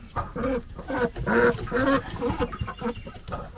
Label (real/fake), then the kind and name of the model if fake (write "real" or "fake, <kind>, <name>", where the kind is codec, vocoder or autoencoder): real